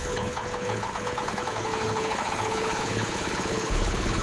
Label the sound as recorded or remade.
remade